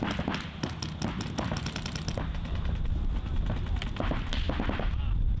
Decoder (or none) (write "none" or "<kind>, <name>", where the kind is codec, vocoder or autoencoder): none